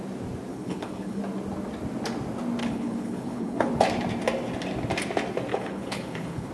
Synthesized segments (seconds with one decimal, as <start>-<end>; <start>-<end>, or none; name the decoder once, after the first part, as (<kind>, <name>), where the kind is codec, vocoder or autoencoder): 0.5-1.2 (codec, HILCodec); 2.6-3.7; 5.5-6.5